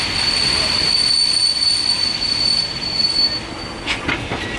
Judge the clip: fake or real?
real